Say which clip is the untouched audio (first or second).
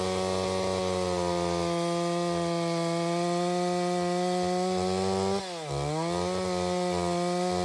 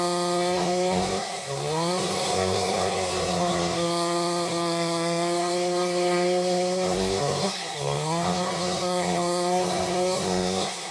first